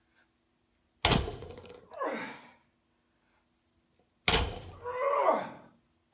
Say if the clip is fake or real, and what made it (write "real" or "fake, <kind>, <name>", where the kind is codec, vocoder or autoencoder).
real